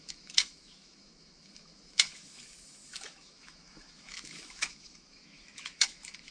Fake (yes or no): yes